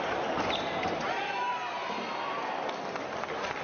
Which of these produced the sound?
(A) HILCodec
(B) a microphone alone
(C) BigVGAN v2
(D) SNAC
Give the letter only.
B